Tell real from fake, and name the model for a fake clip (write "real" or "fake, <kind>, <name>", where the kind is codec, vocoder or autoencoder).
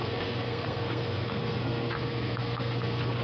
fake, codec, SNAC